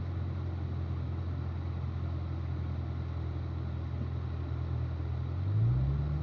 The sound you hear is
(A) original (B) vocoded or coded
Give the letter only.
A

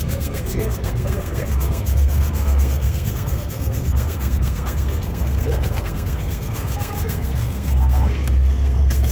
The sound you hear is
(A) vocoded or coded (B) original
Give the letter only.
A